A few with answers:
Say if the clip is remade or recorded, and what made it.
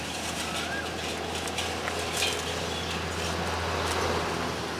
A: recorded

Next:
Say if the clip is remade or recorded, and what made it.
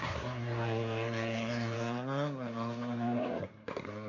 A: remade, codec, SNAC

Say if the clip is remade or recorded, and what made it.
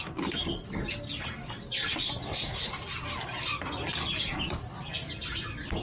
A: remade, vocoder, BigVGAN v2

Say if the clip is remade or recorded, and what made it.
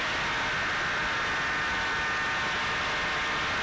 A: recorded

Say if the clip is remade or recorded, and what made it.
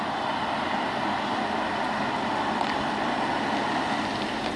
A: recorded